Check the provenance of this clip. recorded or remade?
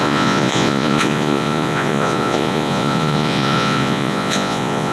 remade